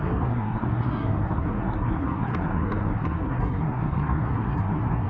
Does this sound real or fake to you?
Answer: fake